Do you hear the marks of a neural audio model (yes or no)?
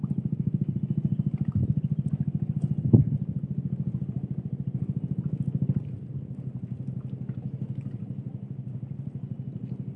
no